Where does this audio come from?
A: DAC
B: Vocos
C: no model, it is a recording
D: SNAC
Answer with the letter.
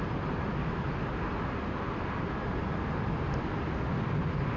C